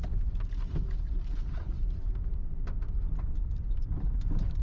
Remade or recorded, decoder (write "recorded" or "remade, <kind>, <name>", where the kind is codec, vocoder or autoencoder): recorded